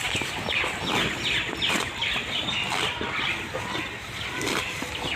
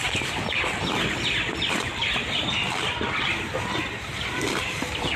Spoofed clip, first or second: second